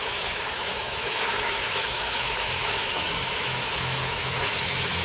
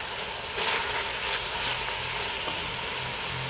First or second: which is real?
second